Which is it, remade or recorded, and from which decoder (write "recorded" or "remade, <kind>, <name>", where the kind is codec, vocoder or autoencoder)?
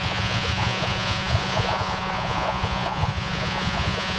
remade, vocoder, Vocos